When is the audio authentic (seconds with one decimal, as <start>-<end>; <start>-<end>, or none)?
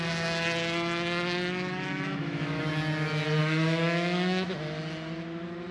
0.0-1.9; 2.6-3.4; 4.5-5.7